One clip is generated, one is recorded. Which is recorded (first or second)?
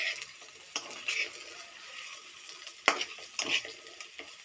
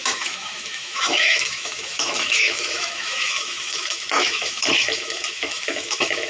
first